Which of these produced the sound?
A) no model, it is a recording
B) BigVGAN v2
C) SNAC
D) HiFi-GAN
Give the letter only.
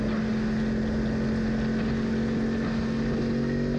A